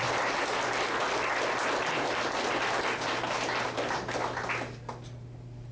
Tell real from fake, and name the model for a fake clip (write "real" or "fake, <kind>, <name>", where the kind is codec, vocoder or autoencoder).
real